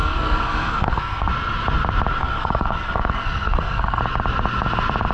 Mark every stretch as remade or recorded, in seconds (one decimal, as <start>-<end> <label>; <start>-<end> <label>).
0.0-1.3 remade; 1.3-2.2 recorded; 2.2-4.0 remade; 4.0-5.1 recorded